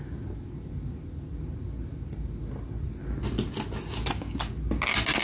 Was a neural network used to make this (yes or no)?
no